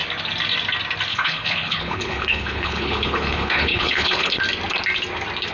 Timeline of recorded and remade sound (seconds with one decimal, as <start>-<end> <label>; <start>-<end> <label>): 0.0-1.1 recorded; 1.1-4.4 remade; 4.4-5.5 recorded